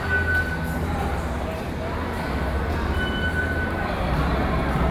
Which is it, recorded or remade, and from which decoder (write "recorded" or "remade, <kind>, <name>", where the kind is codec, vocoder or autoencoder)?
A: recorded